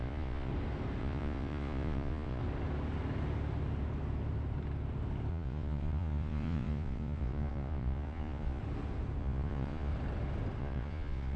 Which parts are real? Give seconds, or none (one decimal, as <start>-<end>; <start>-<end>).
0.5-1.0; 2.4-5.3; 8.6-9.2; 9.9-10.6